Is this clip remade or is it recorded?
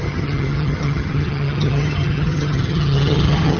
remade